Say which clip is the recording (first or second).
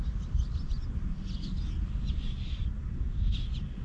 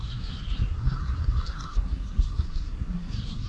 first